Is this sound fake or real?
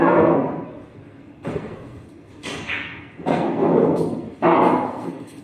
fake